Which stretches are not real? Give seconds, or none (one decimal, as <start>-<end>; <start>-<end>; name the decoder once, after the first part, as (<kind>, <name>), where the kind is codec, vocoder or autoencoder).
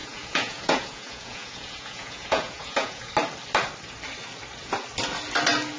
0.0-3.1 (vocoder, Vocos)